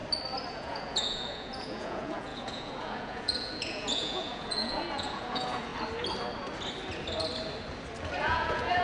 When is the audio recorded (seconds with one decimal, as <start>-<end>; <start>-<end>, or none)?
0.0-0.5; 5.7-8.2

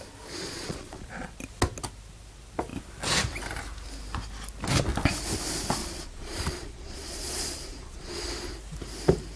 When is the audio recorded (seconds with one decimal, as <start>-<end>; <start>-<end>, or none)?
0.0-0.4; 1.4-5.8; 8.2-9.4

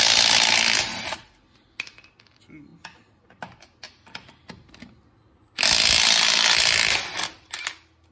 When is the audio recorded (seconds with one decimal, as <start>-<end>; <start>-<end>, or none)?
0.0-8.1